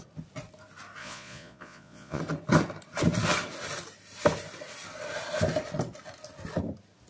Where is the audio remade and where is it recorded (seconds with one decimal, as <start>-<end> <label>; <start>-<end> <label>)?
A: 0.0-1.0 recorded; 1.0-2.2 remade; 2.2-7.1 recorded